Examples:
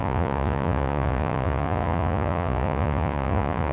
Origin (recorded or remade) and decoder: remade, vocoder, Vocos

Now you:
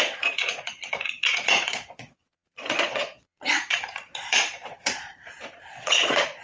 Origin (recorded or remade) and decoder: remade, vocoder, Vocos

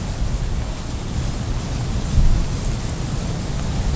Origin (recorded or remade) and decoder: recorded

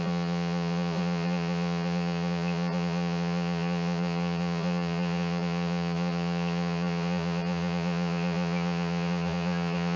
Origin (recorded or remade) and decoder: remade, vocoder, Vocos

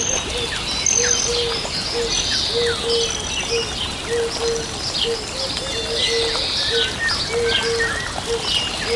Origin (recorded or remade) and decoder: recorded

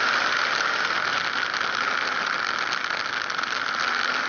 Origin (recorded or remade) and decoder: recorded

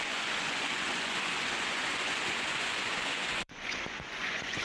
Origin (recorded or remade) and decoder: remade, vocoder, Vocos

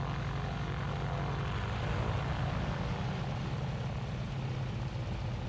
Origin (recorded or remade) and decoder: recorded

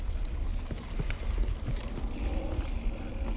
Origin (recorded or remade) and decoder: recorded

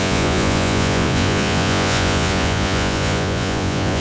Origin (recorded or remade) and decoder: remade, vocoder, Vocos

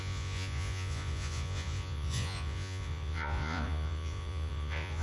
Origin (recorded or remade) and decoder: remade, vocoder, Vocos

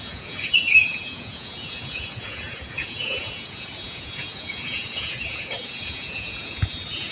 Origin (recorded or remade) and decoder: remade, vocoder, Vocos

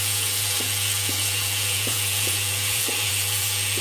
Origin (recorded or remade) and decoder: remade, vocoder, Vocos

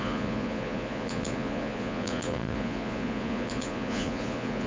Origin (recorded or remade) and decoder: remade, vocoder, Vocos